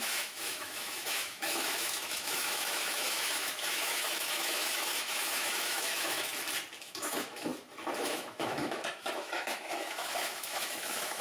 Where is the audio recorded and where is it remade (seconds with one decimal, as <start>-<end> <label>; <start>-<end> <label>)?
0.0-6.3 remade; 6.3-6.8 recorded; 6.8-7.5 remade; 7.5-8.0 recorded; 8.0-11.2 remade